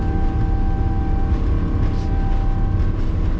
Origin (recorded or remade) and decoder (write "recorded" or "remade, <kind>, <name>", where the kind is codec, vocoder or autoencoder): recorded